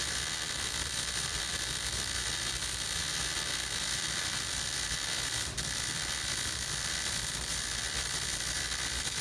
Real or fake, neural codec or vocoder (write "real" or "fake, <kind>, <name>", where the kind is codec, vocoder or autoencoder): fake, vocoder, BigVGAN v2